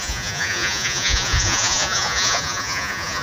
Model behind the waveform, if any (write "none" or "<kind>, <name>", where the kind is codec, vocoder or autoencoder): vocoder, Vocos